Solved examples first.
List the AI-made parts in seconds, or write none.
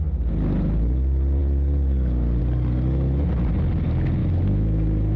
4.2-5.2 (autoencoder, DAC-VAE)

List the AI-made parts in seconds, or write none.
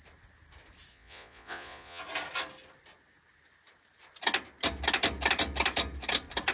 0.9-2.0 (vocoder, Vocos)